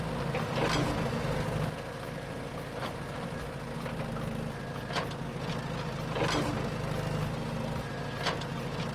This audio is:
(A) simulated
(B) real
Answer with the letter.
B